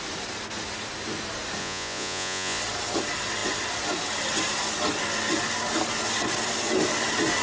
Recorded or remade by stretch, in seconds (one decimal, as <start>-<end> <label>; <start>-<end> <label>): 0.0-1.6 recorded; 1.6-2.6 remade; 2.6-7.4 recorded